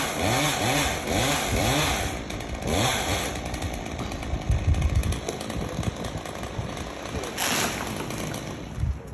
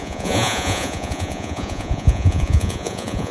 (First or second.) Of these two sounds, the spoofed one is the second